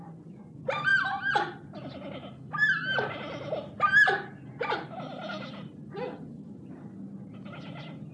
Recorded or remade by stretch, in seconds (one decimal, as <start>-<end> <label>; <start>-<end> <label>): 0.0-8.1 recorded